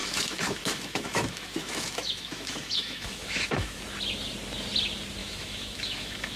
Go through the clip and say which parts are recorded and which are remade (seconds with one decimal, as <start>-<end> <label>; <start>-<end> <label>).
0.0-3.8 remade; 3.8-5.2 recorded; 5.2-6.4 remade